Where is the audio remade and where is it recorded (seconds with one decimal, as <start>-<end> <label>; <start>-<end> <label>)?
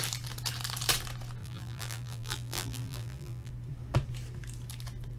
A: 0.0-1.4 recorded; 1.4-3.5 remade; 3.5-5.2 recorded